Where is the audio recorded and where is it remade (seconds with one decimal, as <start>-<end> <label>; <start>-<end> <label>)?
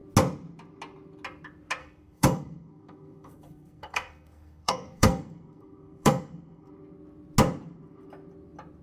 0.0-1.8 recorded; 1.8-6.7 remade; 6.7-8.8 recorded